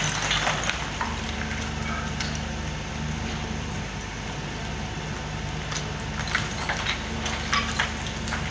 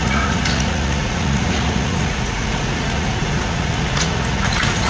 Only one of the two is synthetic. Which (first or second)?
second